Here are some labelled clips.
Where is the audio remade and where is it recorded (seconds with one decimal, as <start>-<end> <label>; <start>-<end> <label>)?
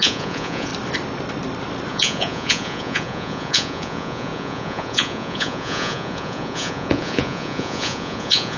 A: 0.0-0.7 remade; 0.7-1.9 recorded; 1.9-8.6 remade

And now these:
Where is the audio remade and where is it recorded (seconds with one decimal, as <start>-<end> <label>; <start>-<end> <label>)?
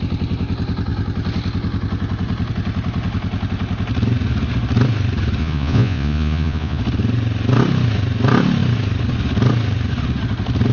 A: 0.0-5.4 recorded; 5.4-6.8 remade; 6.8-10.7 recorded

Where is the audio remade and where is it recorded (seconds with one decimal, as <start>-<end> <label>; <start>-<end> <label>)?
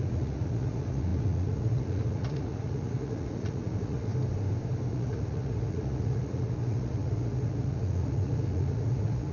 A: 0.0-4.1 remade; 4.1-4.9 recorded; 4.9-9.3 remade